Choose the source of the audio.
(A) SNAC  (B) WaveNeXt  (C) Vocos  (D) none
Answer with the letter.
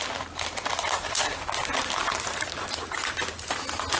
D